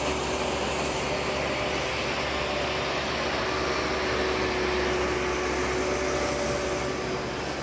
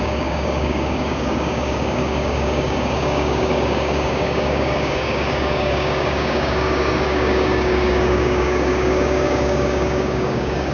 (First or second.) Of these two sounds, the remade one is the second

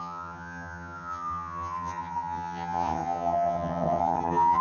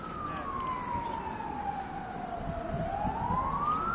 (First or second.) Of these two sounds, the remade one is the first